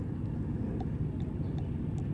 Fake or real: real